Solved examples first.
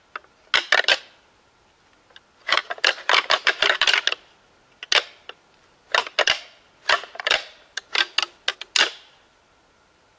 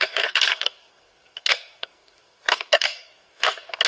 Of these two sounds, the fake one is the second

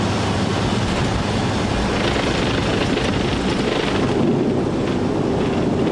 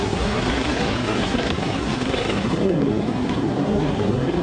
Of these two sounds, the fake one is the second